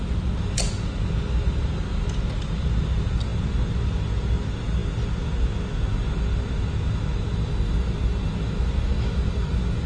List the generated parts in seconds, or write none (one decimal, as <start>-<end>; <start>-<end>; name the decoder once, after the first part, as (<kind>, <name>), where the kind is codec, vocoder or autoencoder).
none

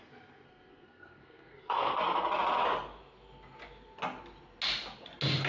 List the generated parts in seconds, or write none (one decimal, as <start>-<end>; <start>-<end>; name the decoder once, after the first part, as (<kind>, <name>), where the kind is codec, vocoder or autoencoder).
0.0-2.0 (codec, SNAC)